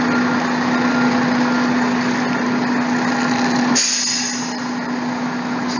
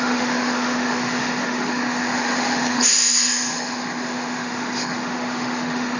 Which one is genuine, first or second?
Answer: first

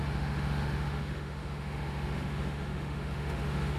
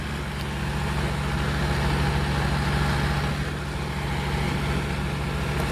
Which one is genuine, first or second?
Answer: second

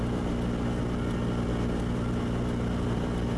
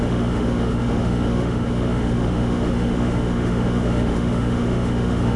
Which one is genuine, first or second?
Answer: first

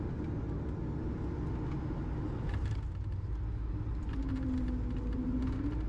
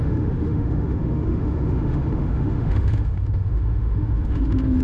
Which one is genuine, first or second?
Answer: first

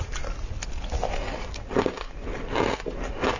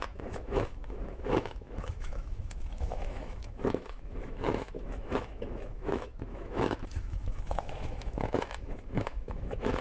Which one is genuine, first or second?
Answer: first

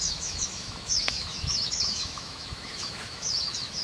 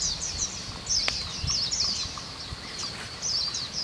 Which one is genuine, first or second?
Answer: second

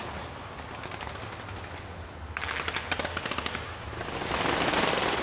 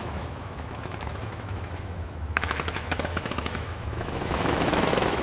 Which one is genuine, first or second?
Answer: first